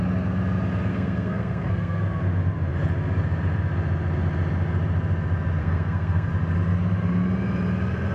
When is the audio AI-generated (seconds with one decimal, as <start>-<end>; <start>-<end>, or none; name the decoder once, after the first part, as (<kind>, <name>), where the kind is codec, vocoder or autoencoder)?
0.9-2.0 (codec, SNAC); 5.6-6.3